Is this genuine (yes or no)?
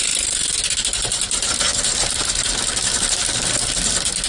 yes